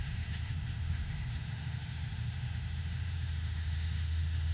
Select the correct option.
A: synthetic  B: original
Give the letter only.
A